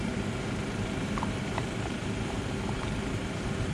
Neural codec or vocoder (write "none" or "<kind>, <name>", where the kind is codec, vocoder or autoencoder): vocoder, BigVGAN v2